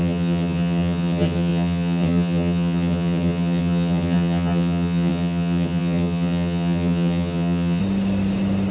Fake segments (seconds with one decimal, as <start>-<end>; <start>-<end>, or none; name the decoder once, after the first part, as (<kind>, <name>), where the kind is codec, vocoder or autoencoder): 0.0-7.8 (vocoder, HiFi-GAN)